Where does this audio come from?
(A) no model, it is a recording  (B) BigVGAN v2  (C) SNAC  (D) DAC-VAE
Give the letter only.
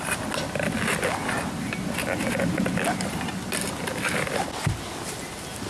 A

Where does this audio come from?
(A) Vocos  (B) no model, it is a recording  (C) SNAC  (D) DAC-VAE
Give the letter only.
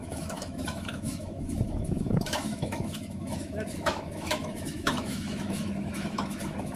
D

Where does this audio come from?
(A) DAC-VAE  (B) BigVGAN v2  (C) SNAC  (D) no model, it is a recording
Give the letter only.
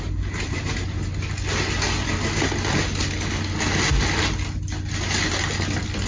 D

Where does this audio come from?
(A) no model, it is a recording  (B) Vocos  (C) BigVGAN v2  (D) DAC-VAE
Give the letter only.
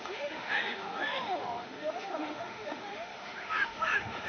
D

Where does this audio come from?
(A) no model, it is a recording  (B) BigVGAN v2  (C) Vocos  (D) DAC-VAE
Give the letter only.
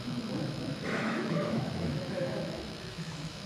D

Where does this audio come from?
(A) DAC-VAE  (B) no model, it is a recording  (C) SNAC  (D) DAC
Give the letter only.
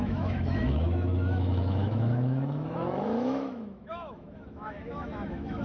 A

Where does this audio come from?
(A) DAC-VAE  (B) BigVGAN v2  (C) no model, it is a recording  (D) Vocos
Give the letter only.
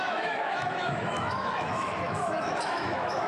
A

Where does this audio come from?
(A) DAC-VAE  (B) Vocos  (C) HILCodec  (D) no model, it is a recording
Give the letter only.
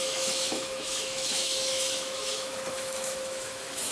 A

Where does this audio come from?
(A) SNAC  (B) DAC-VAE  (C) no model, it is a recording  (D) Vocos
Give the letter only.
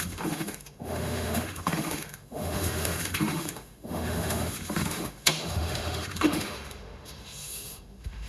B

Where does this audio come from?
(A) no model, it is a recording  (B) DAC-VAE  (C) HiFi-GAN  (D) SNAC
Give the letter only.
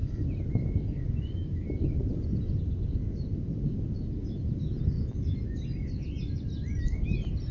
A